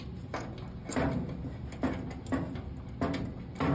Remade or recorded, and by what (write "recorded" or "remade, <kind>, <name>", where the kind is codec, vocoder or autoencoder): recorded